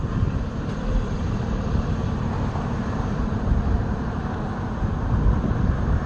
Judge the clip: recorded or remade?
remade